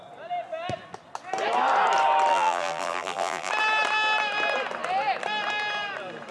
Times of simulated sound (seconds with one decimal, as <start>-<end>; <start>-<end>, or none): 2.3-3.5